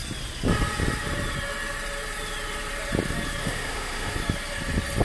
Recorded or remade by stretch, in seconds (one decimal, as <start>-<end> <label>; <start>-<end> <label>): 0.0-3.4 recorded; 3.4-4.1 remade; 4.1-5.0 recorded